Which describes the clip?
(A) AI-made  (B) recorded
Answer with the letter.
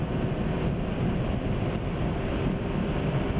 B